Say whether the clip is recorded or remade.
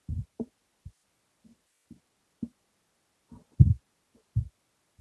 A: recorded